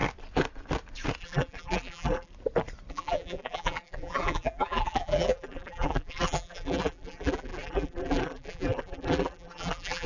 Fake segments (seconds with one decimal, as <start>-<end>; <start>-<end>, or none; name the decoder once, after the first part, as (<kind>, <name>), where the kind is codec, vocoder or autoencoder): 1.2-2.3 (vocoder, BigVGAN v2); 2.9-10.1